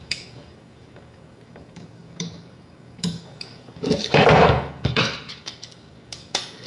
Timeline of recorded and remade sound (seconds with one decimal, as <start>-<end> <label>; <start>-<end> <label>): 0.0-6.7 remade